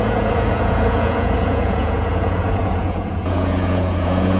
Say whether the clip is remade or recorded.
remade